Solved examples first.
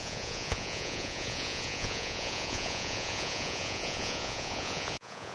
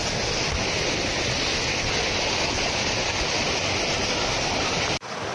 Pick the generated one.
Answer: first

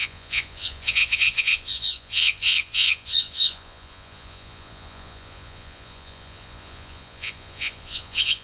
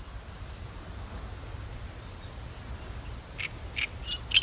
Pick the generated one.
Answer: first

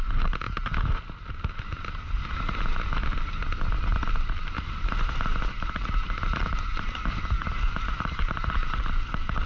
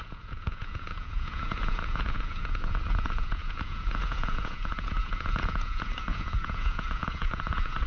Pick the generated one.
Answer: second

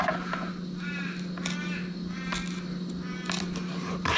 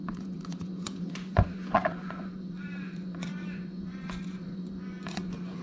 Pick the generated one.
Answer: second